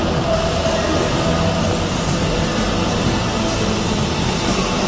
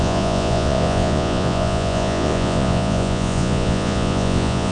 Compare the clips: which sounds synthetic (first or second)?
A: second